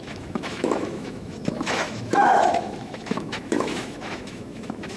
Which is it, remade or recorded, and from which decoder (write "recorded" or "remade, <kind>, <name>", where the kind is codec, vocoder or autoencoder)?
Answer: remade, autoencoder, DAC-VAE